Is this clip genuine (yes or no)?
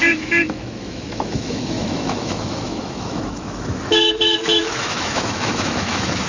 no